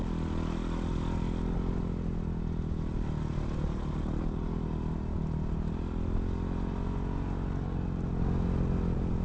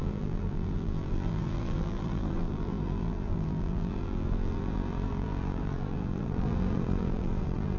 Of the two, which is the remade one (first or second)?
second